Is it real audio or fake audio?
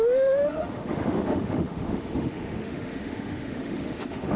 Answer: fake